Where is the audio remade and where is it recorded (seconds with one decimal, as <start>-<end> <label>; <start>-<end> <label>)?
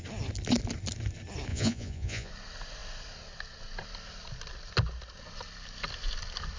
0.0-1.5 recorded; 1.5-2.3 remade; 2.3-6.6 recorded